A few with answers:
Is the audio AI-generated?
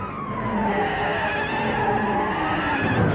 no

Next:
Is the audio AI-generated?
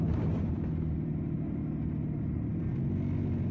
no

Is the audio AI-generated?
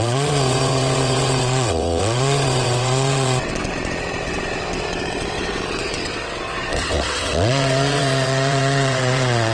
yes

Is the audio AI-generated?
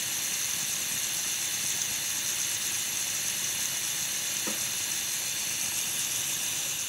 no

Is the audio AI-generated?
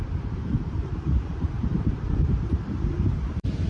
yes